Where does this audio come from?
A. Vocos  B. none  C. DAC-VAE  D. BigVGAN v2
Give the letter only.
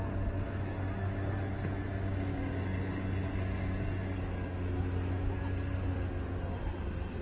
B